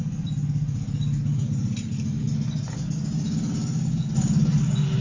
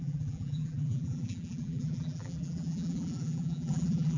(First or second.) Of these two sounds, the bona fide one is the first